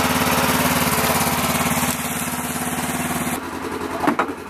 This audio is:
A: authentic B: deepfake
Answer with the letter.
A